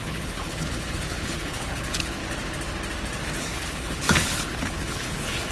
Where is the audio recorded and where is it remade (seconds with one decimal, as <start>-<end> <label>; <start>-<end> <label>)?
0.0-2.2 remade; 2.2-3.4 recorded; 3.4-5.5 remade